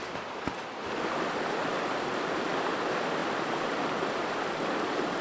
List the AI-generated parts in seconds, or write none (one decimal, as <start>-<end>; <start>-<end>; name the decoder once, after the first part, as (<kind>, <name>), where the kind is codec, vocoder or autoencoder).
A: 0.0-0.6 (vocoder, BigVGAN v2); 3.2-3.9